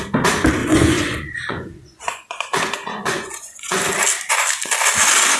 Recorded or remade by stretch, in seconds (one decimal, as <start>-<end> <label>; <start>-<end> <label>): 0.0-0.6 recorded; 0.6-3.8 remade; 3.8-5.4 recorded